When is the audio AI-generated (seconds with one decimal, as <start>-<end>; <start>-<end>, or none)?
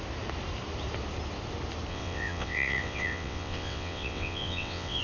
1.9-5.0